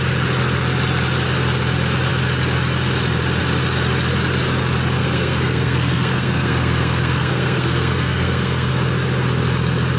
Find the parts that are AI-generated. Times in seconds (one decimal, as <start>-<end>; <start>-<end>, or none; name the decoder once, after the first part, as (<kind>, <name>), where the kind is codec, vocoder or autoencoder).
5.0-8.7 (codec, SNAC)